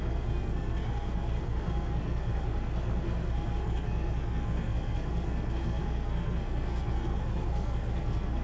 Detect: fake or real fake